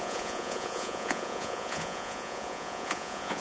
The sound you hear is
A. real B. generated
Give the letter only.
B